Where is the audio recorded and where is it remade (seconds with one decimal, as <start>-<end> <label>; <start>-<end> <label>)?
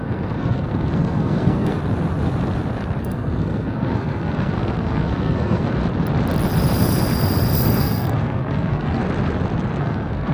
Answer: 0.0-1.8 remade; 1.8-3.0 recorded; 3.0-5.8 remade; 5.8-7.8 recorded; 7.8-9.0 remade; 9.0-9.8 recorded; 9.8-10.3 remade